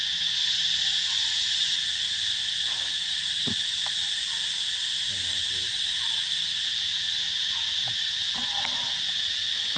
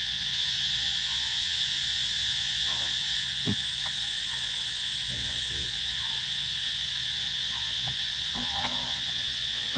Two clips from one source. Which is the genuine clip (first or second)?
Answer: first